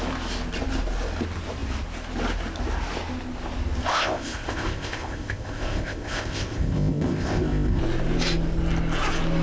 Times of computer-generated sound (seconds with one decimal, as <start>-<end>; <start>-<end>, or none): 3.9-7.8